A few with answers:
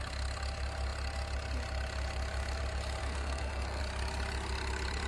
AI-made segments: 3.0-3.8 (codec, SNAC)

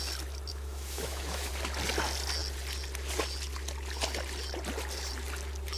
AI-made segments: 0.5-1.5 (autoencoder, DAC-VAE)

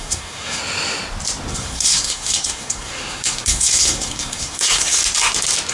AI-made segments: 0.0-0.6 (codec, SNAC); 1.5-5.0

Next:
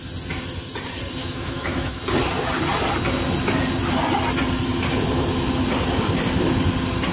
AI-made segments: 1.2-2.0 (autoencoder, DAC-VAE)